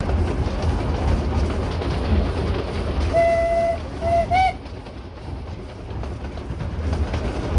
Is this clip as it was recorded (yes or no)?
yes